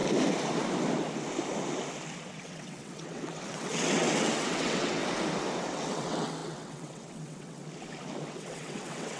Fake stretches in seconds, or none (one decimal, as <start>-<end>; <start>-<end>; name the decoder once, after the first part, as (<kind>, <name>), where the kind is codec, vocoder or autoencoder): 2.3-5.0 (vocoder, WaveNeXt); 5.7-7.6; 8.2-9.2